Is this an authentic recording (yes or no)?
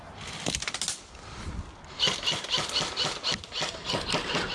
yes